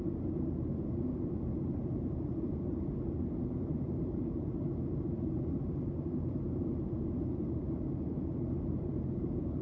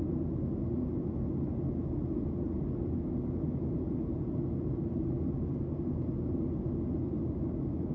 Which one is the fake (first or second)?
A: first